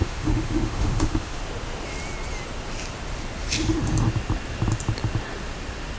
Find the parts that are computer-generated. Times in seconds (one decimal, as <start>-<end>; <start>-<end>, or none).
0.0-1.4